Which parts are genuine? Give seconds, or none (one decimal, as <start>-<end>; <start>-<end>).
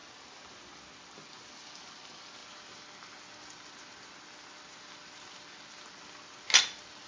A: 0.0-7.1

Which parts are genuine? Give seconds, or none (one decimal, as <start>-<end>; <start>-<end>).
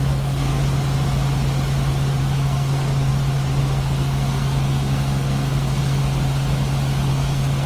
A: 0.6-2.2; 3.1-3.6; 6.0-7.1